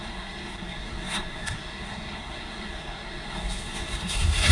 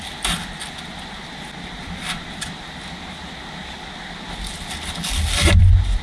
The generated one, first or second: first